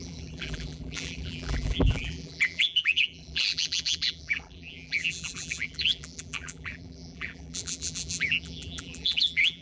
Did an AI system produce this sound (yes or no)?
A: yes